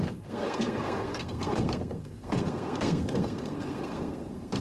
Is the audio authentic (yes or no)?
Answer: no